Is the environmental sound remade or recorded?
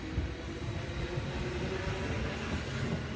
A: recorded